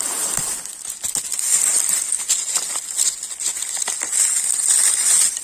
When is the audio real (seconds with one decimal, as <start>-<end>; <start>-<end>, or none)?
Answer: 0.0-5.4